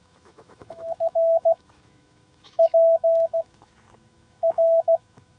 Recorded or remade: remade